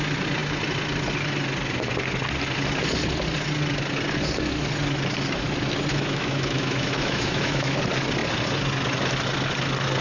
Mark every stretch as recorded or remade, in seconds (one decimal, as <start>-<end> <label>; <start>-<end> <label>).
0.0-5.9 recorded; 5.9-7.8 remade; 7.8-10.0 recorded